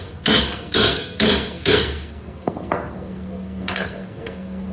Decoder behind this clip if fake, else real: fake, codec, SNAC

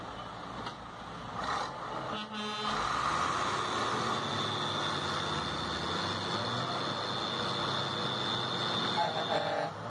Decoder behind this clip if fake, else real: real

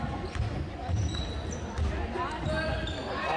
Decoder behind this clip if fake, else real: real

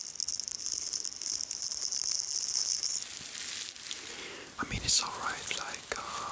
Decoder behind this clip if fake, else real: real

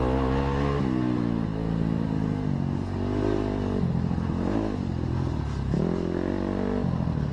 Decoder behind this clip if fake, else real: real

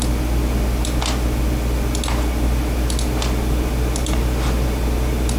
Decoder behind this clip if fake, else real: real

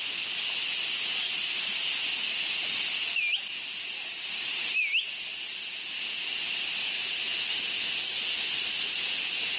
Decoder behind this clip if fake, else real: real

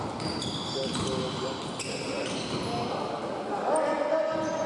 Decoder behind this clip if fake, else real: real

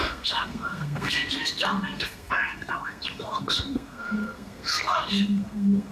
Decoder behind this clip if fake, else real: fake, codec, SNAC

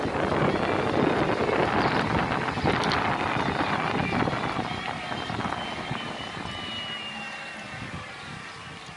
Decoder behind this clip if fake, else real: real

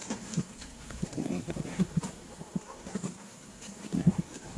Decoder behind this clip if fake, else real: fake, codec, SNAC